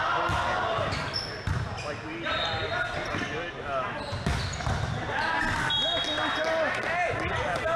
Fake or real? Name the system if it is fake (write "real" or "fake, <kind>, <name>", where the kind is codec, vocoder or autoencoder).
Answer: real